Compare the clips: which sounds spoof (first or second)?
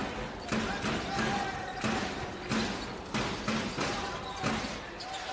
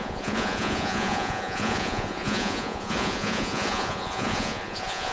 second